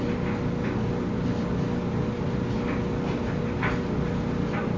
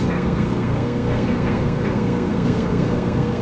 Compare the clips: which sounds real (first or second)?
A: first